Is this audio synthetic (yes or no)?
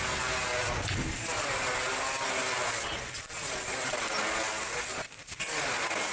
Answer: no